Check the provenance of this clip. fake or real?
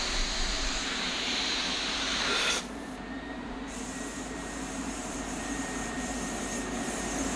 fake